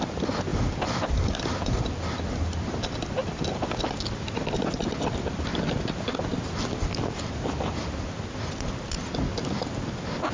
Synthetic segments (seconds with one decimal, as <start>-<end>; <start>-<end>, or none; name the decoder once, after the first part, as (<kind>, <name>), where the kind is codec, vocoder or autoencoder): 0.5-1.5 (vocoder, BigVGAN v2); 3.2-4.2